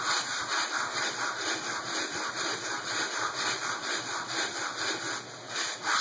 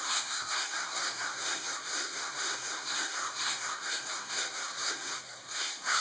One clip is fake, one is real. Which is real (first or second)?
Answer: first